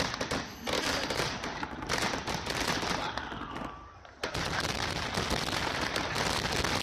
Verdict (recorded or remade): recorded